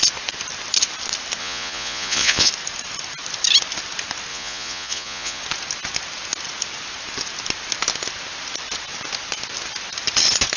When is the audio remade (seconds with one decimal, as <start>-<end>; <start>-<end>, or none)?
1.4-2.5; 4.3-5.4